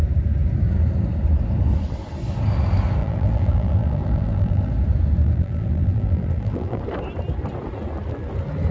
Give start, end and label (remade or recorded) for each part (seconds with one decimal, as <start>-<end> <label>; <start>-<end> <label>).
0.0-3.0 recorded; 3.0-4.7 remade; 4.7-5.2 recorded; 5.2-6.8 remade; 6.8-8.7 recorded